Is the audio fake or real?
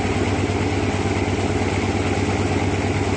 real